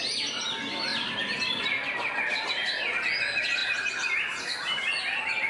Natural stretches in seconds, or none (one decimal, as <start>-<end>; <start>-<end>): 0.0-5.5